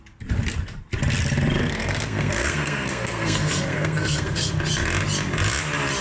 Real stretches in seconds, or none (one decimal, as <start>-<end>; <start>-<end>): 0.0-1.6; 4.5-6.0

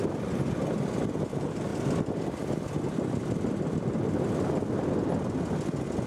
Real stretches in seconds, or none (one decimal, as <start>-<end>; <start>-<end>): 0.0-1.7; 4.7-6.1

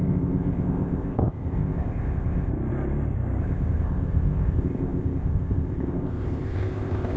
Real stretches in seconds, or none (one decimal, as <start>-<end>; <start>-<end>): 2.5-3.4

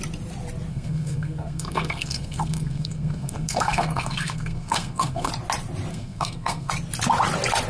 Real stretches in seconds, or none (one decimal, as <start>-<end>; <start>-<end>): 0.0-0.7; 5.3-5.9; 6.7-7.7

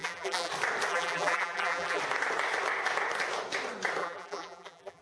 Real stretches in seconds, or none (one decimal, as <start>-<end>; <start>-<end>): 0.5-0.9; 2.0-4.0

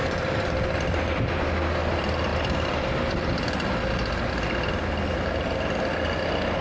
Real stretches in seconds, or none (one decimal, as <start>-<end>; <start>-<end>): 1.1-2.3; 3.2-6.6